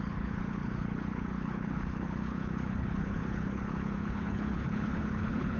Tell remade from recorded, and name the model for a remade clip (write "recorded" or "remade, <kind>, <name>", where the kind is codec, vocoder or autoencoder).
remade, codec, HILCodec